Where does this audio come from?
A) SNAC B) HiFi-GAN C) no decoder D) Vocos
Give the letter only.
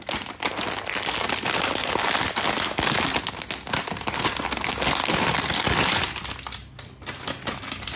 C